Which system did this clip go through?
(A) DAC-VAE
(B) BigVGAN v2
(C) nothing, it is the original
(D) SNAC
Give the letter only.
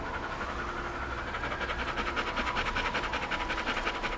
C